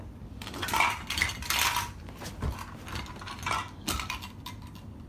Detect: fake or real real